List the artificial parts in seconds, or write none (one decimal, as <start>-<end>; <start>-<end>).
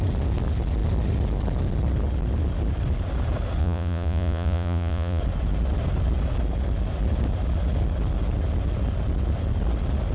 3.6-5.2